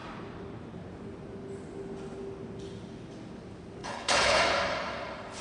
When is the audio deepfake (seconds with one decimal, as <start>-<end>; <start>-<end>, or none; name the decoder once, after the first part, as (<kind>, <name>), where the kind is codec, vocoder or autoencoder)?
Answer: 3.8-4.4 (codec, HILCodec)